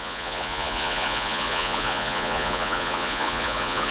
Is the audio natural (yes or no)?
no